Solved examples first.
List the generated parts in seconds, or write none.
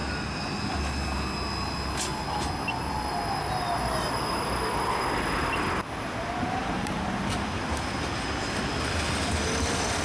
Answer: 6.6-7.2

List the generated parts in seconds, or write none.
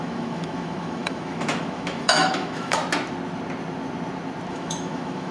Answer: 0.0-2.8; 4.5-5.3